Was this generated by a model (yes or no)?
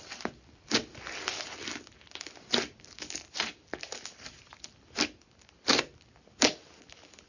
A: no